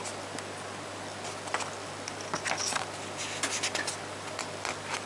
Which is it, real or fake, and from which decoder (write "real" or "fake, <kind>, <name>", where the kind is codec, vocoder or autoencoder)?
real